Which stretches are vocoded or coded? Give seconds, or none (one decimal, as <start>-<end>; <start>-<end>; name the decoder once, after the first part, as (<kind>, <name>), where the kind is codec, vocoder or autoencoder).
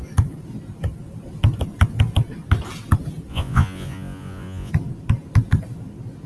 3.3-4.7 (vocoder, Vocos)